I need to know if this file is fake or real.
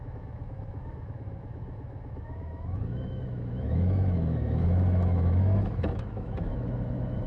fake